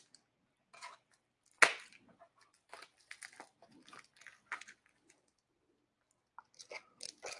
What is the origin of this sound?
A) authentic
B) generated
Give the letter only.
A